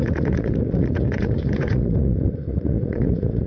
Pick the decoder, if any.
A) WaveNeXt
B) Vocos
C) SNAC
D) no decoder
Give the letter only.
B